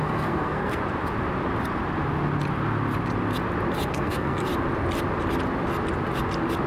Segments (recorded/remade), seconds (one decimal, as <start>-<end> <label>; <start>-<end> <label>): 0.0-0.8 remade; 0.8-3.9 recorded; 3.9-4.5 remade; 4.5-6.7 recorded